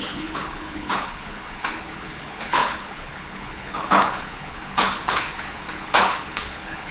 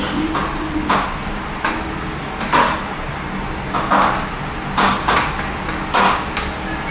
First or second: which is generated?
first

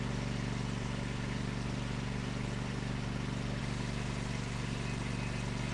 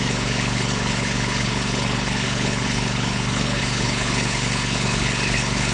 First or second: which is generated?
second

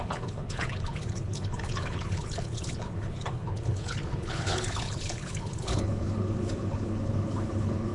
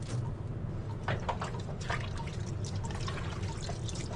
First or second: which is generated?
first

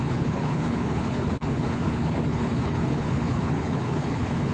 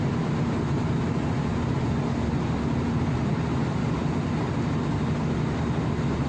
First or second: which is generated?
first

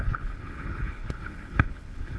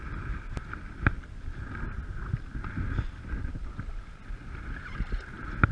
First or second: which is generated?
first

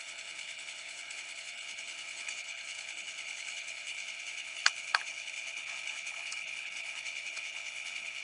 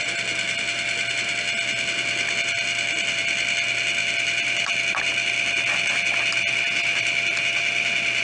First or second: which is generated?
first